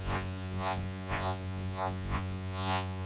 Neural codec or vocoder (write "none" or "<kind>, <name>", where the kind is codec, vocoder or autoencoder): vocoder, Vocos